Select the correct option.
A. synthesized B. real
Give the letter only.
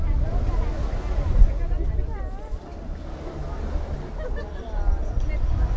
B